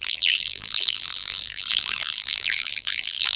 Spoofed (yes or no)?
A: yes